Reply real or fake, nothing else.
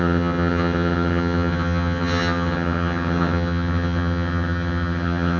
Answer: fake